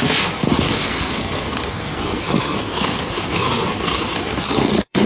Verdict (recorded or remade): remade